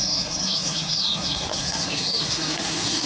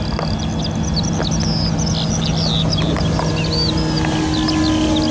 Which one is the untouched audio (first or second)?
second